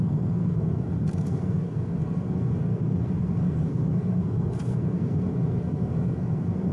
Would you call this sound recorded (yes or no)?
no